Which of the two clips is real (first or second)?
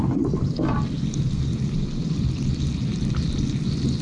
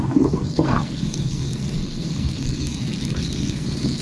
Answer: first